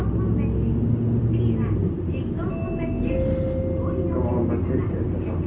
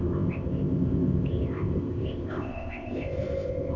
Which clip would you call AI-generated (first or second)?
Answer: second